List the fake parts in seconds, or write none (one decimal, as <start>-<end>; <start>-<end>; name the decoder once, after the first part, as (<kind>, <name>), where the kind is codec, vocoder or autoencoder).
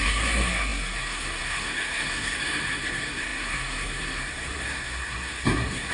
0.0-5.9 (codec, SNAC)